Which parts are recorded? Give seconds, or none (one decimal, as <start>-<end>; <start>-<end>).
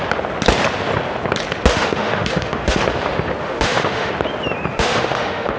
0.0-1.7; 2.8-3.4; 4.1-4.7